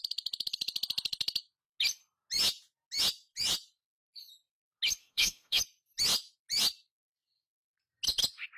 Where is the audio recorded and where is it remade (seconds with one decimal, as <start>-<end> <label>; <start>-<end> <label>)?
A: 0.0-5.0 recorded; 5.0-5.6 remade; 5.6-8.6 recorded